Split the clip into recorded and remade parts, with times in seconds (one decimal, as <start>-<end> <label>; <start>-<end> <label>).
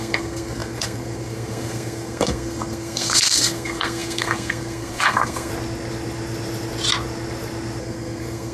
0.0-5.5 remade; 5.5-7.8 recorded; 7.8-8.5 remade